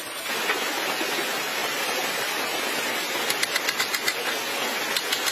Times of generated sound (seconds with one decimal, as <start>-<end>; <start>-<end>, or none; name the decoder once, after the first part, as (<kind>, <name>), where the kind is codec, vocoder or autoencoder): 1.6-2.8 (vocoder, BigVGAN v2)

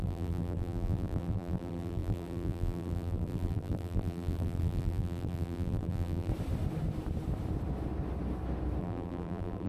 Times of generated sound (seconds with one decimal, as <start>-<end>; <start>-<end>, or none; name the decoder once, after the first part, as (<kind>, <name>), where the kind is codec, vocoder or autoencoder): 0.0-6.3 (vocoder, BigVGAN v2); 8.8-9.7